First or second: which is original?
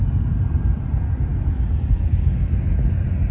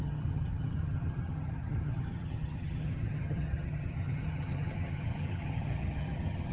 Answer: first